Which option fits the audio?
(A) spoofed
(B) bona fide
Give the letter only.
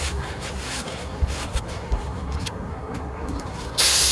A